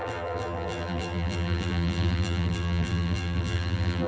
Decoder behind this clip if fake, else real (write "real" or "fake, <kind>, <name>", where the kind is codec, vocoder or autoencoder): fake, vocoder, BigVGAN v2